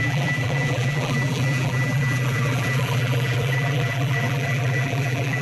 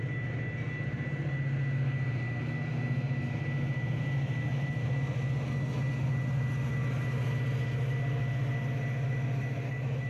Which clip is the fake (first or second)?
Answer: first